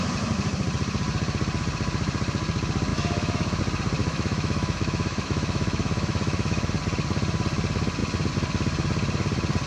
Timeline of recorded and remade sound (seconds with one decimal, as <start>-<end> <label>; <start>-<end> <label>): 0.0-2.9 recorded; 2.9-3.6 remade; 3.6-4.0 recorded; 4.0-6.7 remade; 6.7-9.7 recorded